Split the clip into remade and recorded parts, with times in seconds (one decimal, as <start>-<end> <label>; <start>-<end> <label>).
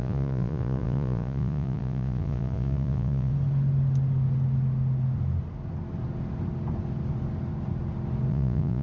0.0-3.3 remade; 3.3-8.3 recorded; 8.3-8.8 remade